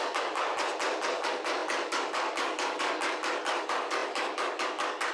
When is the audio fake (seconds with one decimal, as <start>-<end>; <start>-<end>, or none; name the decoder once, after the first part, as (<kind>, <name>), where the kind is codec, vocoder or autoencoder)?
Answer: 0.0-0.5 (codec, DAC); 1.1-5.1